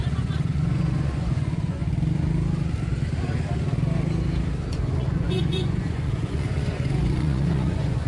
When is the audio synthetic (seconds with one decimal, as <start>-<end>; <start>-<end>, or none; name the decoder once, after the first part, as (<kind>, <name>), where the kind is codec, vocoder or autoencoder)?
0.0-1.8 (vocoder, Vocos); 4.7-8.1